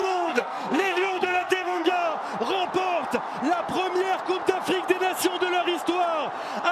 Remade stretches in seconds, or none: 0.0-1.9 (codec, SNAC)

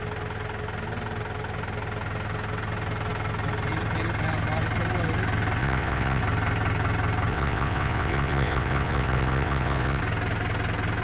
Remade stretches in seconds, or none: 5.6-6.2 (vocoder, WaveNeXt); 7.3-10.0

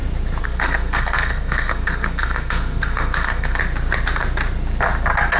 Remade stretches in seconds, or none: 0.4-3.6 (codec, SNAC)

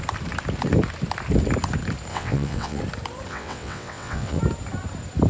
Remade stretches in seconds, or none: 2.1-2.8 (vocoder, WaveNeXt); 3.3-4.4